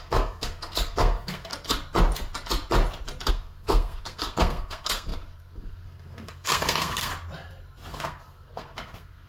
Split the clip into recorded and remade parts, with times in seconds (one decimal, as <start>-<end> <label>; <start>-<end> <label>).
0.0-1.5 remade; 1.5-3.3 recorded; 3.3-7.1 remade; 7.1-7.9 recorded; 7.9-9.3 remade